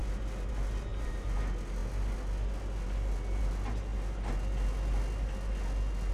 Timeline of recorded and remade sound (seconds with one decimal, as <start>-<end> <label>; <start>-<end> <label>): 0.0-0.9 recorded; 0.9-1.4 remade; 1.4-6.1 recorded